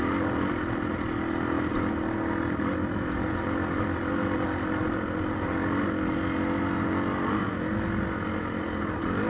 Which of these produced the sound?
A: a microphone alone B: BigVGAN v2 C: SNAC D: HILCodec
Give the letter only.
A